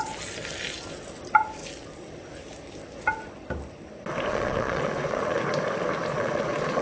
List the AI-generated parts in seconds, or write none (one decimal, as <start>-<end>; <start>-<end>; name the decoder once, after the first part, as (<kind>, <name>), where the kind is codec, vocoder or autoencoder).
4.3-5.4 (vocoder, Vocos); 6.1-6.8